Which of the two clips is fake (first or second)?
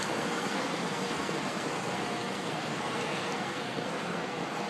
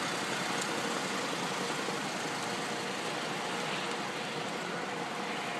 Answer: first